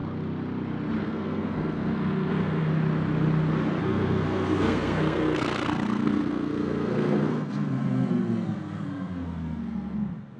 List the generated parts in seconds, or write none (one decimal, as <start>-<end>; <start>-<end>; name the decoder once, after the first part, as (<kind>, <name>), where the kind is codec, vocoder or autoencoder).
1.0-2.7 (codec, SNAC); 3.8-10.4